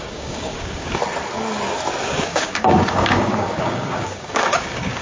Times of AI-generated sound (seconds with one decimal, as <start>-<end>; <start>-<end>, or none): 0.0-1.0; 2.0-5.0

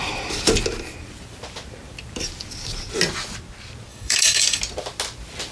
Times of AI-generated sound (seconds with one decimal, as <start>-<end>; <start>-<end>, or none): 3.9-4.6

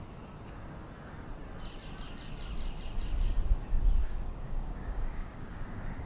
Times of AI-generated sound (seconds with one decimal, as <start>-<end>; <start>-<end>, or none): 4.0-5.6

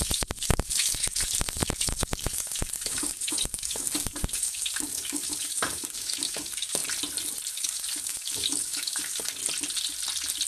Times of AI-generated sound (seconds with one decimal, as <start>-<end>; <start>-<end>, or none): 0.0-6.8; 7.5-9.4